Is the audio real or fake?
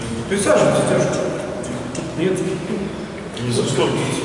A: real